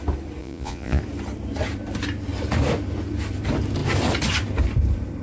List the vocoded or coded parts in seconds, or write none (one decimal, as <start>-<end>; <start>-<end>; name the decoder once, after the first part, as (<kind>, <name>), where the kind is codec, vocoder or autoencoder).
0.4-1.0 (vocoder, Vocos)

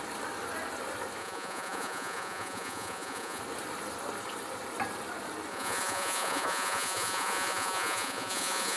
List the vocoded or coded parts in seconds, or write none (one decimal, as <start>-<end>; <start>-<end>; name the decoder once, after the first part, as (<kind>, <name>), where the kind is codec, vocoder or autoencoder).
1.2-3.4 (vocoder, Vocos); 5.5-8.8

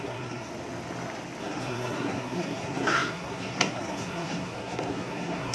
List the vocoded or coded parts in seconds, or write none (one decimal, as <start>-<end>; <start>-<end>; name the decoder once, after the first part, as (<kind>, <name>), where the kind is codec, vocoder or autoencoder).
0.0-0.5 (codec, SNAC); 1.4-5.5

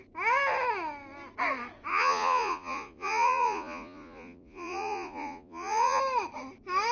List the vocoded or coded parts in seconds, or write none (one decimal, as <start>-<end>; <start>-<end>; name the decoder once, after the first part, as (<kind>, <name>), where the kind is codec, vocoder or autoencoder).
1.9-6.0 (vocoder, Vocos)